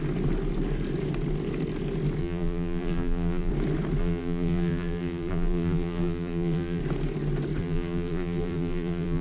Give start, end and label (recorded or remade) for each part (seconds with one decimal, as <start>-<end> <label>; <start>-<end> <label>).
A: 0.0-2.2 recorded; 2.2-3.5 remade; 3.5-4.0 recorded; 4.0-6.8 remade; 6.8-7.6 recorded; 7.6-9.2 remade